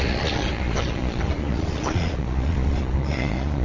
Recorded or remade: remade